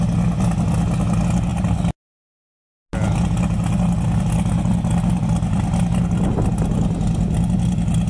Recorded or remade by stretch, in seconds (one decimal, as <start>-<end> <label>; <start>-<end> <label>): 0.0-8.1 recorded